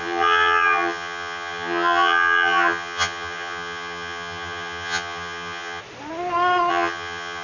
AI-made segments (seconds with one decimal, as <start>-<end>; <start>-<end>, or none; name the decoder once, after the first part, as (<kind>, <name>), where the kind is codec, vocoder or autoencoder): 0.0-5.8 (vocoder, HiFi-GAN); 6.7-7.4